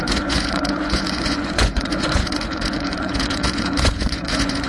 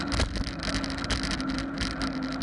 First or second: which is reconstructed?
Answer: first